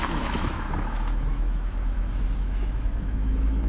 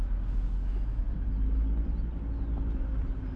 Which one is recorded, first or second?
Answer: second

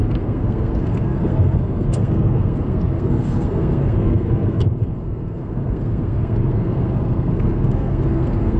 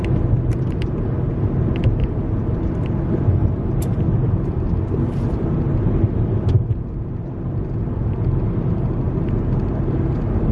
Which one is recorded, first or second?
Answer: second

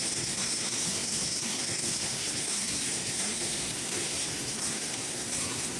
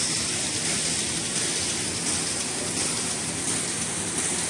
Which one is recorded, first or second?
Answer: second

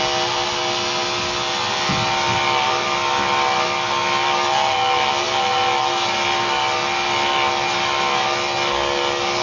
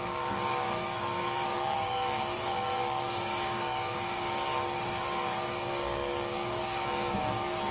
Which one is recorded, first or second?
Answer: first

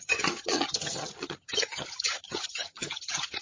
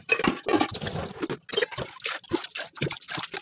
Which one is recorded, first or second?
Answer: second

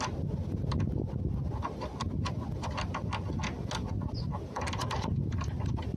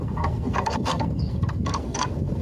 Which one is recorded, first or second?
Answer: first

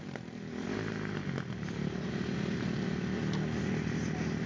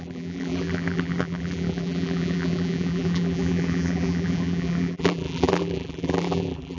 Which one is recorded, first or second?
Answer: first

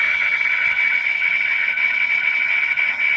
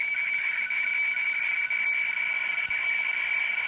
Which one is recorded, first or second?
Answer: second